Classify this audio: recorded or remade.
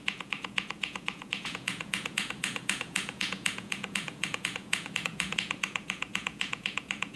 remade